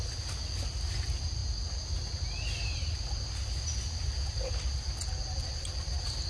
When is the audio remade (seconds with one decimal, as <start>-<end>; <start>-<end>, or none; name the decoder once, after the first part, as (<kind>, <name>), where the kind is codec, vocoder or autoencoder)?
none